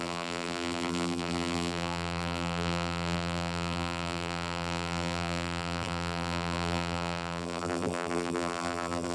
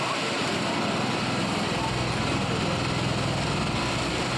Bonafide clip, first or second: second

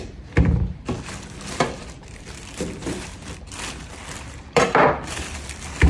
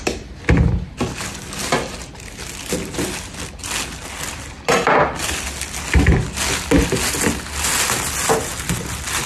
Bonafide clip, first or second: second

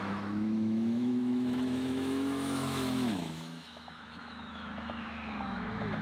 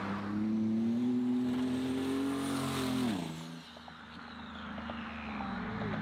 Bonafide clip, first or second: second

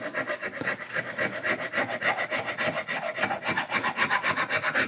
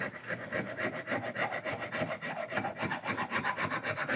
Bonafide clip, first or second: first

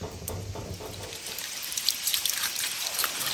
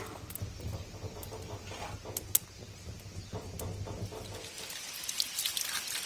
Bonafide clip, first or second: second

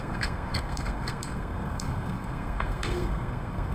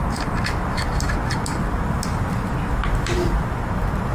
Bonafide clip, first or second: second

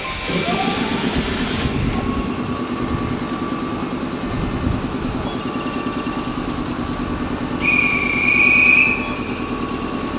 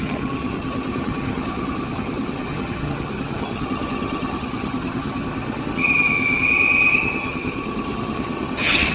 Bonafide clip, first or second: first